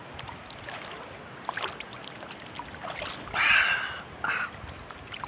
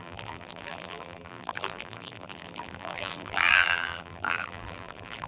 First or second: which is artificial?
second